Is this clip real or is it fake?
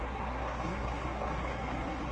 fake